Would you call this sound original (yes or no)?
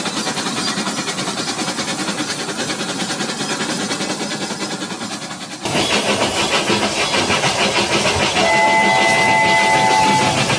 yes